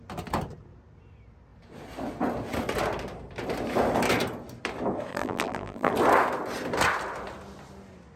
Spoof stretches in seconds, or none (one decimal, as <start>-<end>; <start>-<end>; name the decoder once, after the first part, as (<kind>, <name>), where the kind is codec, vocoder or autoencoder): 5.1-5.9 (vocoder, BigVGAN v2)

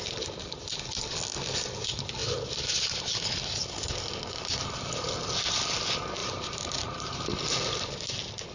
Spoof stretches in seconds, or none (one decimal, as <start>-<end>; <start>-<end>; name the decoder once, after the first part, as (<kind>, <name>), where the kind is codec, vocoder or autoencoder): 6.2-7.2 (vocoder, BigVGAN v2)

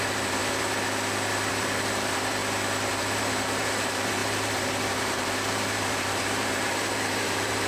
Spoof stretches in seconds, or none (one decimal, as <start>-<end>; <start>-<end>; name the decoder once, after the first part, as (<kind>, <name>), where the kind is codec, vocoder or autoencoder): 0.0-0.4 (vocoder, BigVGAN v2); 1.5-2.4; 2.9-7.7